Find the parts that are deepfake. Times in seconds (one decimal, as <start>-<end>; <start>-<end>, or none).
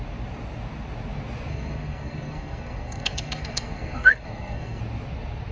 1.5-4.8